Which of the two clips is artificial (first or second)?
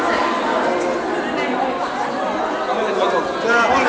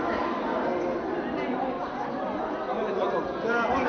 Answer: second